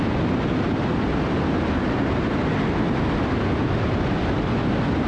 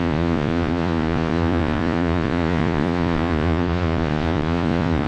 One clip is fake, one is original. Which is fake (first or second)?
second